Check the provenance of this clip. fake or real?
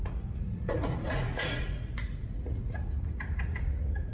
fake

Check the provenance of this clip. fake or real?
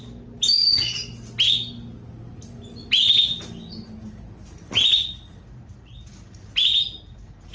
real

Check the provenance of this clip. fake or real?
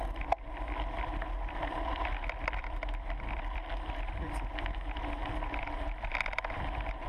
real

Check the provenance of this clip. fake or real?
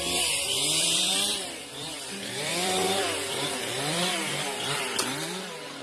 fake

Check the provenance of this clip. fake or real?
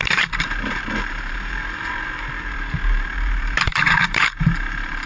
fake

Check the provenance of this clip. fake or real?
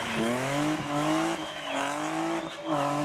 fake